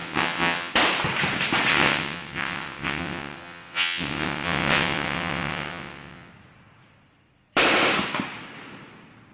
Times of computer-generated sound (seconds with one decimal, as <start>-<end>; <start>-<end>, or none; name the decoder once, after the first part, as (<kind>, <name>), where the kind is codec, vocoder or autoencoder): 0.0-0.7 (vocoder, WaveNeXt); 1.7-6.3